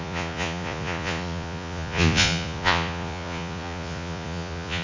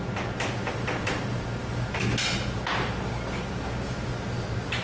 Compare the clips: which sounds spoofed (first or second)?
first